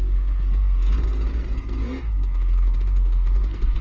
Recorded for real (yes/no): no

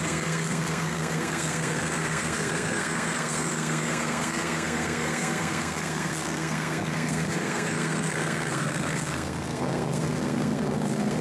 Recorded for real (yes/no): no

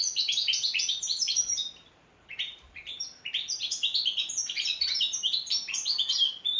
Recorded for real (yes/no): no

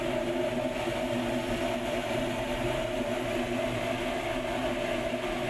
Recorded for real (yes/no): yes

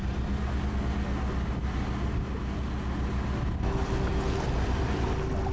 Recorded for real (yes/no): yes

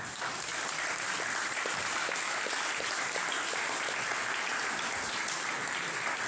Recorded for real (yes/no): yes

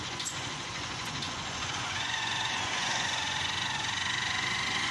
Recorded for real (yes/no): no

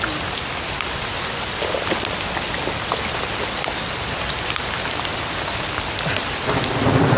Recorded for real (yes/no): yes